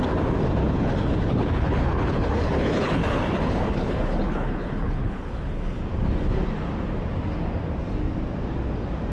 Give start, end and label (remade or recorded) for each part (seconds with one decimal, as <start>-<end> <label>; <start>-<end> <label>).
0.0-0.6 recorded; 0.6-5.8 remade; 5.8-9.1 recorded